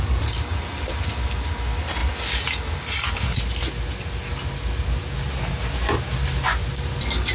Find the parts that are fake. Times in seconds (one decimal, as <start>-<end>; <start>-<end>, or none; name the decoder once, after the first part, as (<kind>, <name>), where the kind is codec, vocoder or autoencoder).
none